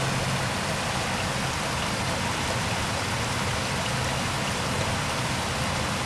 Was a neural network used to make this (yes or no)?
no